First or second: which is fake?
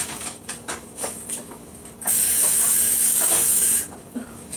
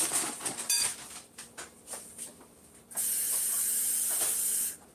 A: first